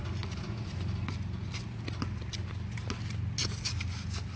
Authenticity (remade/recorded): recorded